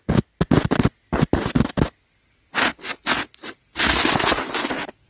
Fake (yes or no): no